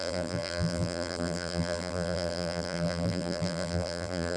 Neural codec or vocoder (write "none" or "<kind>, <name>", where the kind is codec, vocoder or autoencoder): vocoder, BigVGAN v2